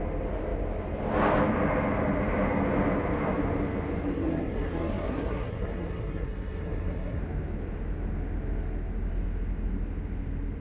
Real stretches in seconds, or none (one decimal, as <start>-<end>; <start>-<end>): 0.0-4.1; 7.2-10.6